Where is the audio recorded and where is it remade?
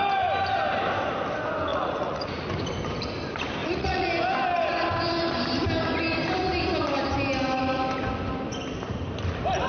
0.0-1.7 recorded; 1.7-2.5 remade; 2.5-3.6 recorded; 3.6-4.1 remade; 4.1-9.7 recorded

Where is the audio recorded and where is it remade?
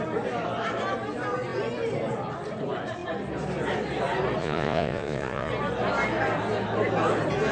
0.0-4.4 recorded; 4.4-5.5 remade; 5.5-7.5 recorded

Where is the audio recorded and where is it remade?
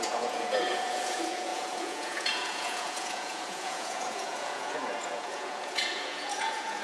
0.0-6.8 remade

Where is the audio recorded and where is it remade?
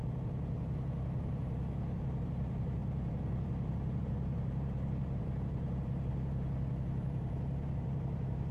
0.0-8.5 remade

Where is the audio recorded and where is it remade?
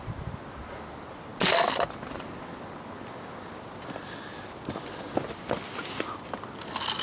0.0-7.0 recorded